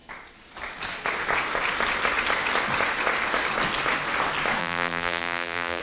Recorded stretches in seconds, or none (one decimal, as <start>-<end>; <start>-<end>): 0.0-4.6